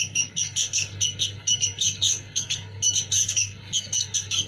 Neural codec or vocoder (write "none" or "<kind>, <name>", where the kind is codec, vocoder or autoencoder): codec, SNAC